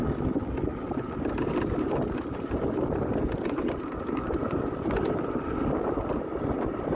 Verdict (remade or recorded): recorded